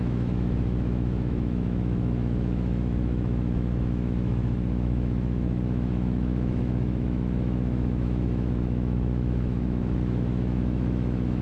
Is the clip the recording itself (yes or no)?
no